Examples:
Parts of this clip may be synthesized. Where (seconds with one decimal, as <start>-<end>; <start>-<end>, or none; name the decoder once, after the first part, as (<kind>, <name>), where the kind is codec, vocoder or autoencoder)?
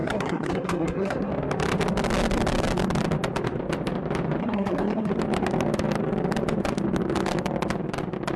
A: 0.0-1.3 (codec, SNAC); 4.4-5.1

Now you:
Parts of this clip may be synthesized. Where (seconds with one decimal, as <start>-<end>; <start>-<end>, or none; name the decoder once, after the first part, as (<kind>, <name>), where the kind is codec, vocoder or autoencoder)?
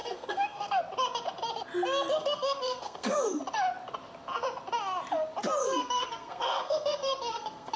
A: 0.0-0.8 (codec, SNAC); 2.1-3.4; 5.6-7.8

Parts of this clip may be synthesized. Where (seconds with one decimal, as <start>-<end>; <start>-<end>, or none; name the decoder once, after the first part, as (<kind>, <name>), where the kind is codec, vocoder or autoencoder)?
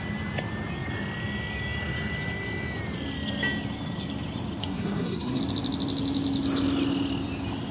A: 4.6-5.4 (codec, SNAC)